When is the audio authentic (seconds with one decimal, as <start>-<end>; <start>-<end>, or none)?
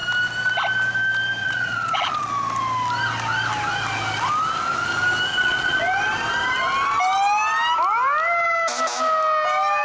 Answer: 0.0-1.4; 2.3-5.3; 5.8-9.8